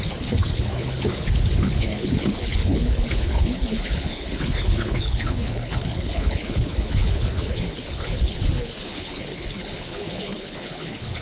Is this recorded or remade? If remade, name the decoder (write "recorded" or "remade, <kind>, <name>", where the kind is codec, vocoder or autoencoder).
remade, codec, HILCodec